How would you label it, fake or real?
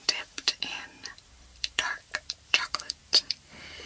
fake